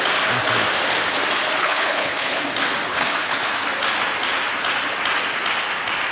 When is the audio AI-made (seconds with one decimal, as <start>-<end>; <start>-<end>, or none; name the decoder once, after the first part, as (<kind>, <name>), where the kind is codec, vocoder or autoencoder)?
1.6-2.4 (codec, HILCodec); 2.9-3.5